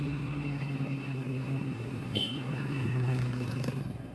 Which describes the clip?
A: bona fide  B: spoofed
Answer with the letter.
B